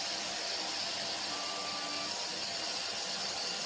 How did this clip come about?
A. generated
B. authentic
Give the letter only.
B